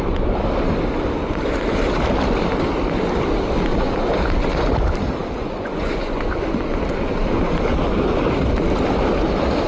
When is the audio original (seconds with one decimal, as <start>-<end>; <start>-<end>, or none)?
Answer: 0.0-3.7; 4.2-5.4; 6.3-9.7